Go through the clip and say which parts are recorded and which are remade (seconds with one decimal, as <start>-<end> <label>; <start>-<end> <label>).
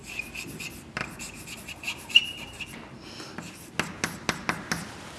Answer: 0.0-1.0 recorded; 1.0-2.7 remade; 2.7-5.2 recorded